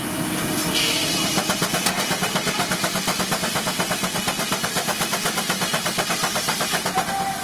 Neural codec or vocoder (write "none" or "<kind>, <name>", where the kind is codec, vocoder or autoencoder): none